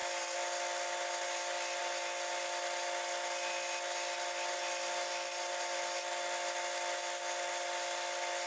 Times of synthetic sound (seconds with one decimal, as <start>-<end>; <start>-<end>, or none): none